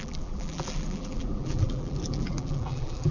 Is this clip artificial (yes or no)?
yes